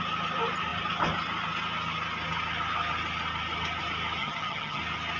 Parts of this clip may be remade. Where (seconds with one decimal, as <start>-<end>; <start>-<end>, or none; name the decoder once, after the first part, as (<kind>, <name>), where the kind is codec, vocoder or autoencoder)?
4.2-4.8 (vocoder, HiFi-GAN)